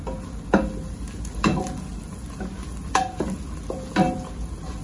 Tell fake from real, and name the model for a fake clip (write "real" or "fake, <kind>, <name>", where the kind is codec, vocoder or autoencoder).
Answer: real